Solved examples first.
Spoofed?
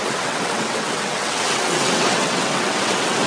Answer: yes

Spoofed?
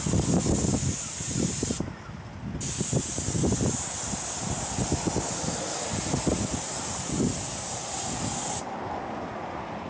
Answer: no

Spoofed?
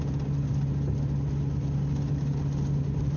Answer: no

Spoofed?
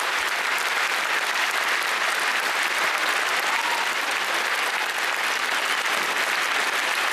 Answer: no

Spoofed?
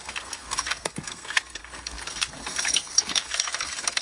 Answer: yes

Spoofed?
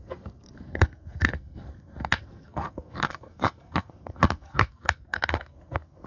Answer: yes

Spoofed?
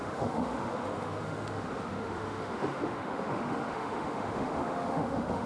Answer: yes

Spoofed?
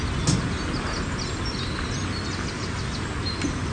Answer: no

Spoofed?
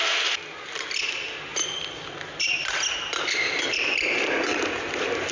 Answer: no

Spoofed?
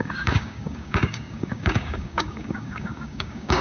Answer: yes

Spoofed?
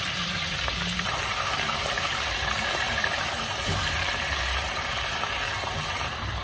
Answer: yes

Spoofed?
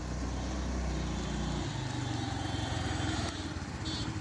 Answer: no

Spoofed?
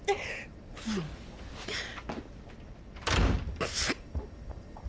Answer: no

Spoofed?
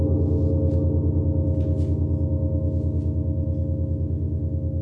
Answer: no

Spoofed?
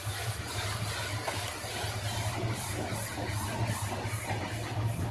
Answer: no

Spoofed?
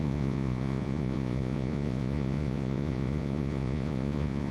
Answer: yes